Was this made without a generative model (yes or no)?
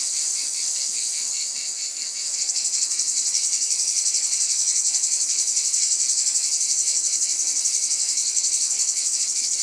no